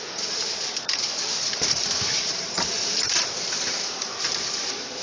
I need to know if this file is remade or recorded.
remade